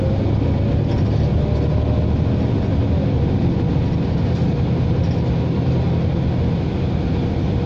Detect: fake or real real